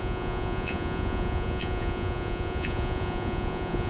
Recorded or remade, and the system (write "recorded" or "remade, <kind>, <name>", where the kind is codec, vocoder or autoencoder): remade, vocoder, Vocos